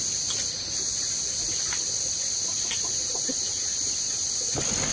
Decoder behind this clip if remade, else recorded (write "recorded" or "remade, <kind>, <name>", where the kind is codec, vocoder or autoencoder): recorded